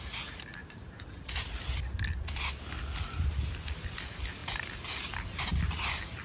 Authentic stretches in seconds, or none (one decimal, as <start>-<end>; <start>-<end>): 0.0-0.6; 1.8-6.2